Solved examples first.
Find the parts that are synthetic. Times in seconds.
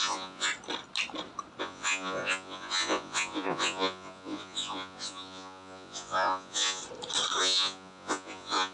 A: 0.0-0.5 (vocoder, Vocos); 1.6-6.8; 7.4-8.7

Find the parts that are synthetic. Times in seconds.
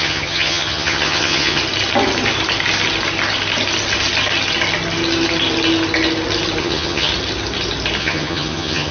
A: 0.0-1.6 (vocoder, HiFi-GAN); 6.6-7.1; 8.0-8.9